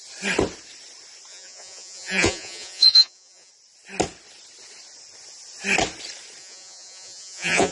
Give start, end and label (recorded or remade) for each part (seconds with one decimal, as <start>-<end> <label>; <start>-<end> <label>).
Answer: 0.0-1.3 recorded; 1.3-3.5 remade; 3.5-6.4 recorded; 6.4-7.7 remade